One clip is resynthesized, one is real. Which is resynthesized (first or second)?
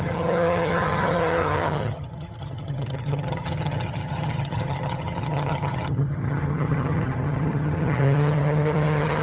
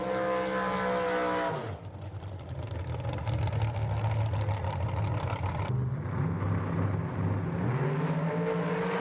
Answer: first